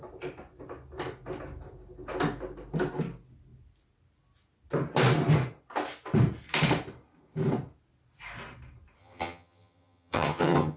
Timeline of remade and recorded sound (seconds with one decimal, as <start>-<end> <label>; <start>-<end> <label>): 0.0-9.0 recorded; 9.0-10.8 remade